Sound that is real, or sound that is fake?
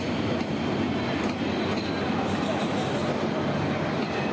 real